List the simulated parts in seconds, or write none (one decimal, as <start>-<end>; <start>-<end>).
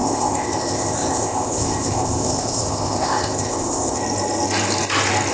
0.0-4.0